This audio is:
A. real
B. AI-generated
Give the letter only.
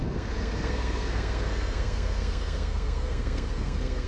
B